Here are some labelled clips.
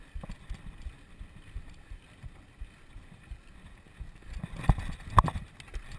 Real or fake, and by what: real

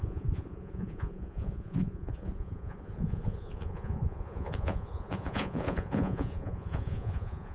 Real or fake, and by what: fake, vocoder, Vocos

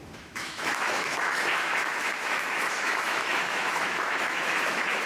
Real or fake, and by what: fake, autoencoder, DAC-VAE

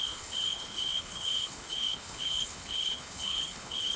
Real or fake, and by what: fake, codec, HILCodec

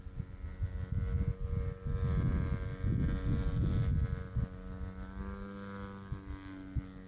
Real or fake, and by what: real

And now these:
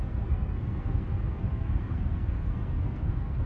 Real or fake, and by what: fake, codec, SNAC